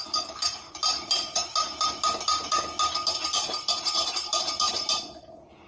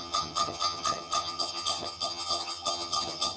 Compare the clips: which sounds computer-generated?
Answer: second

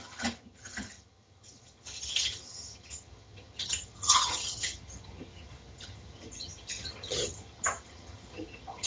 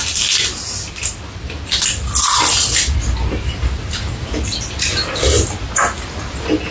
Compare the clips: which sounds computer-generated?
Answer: first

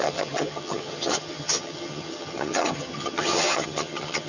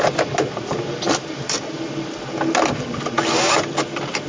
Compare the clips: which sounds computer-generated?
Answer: first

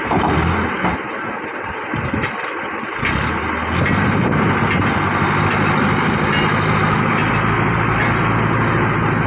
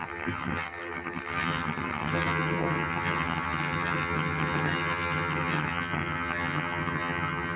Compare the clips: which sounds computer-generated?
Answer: second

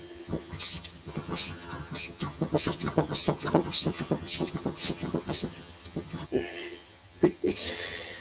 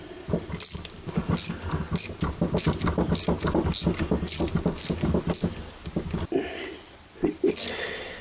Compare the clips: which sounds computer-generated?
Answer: first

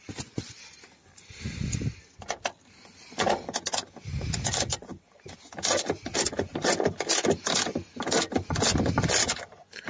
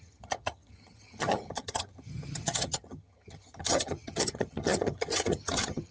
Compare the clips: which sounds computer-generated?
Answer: second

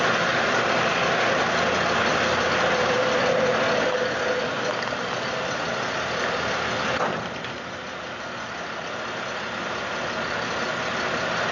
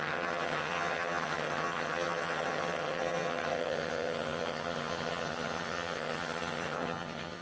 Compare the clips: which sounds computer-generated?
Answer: second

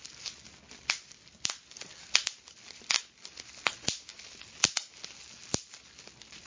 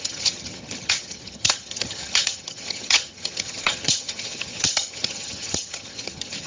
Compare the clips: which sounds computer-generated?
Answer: second